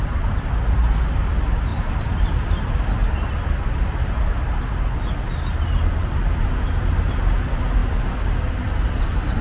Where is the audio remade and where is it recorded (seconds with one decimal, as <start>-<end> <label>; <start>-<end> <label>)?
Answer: 0.0-0.8 remade; 0.8-9.4 recorded